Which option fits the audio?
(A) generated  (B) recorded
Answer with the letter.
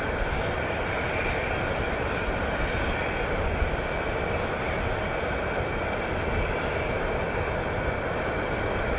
B